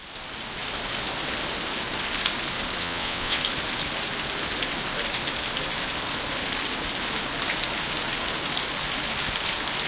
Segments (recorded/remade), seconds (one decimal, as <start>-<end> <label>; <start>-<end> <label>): 0.0-2.8 recorded; 2.8-3.4 remade; 3.4-9.9 recorded